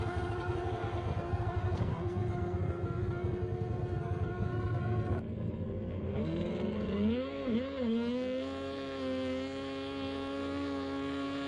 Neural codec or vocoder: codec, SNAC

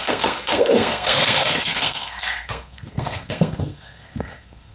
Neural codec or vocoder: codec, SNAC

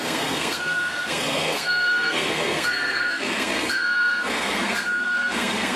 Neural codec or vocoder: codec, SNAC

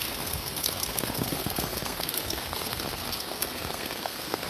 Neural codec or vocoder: codec, SNAC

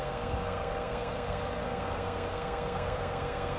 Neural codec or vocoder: codec, SNAC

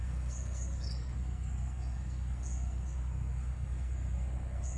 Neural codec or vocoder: codec, SNAC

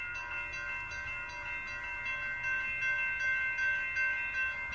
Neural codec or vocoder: none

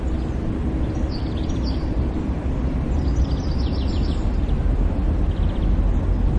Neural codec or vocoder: none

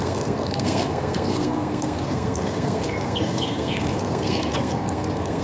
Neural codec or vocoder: codec, SNAC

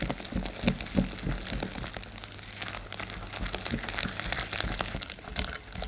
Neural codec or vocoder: none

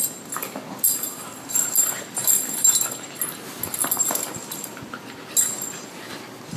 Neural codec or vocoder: none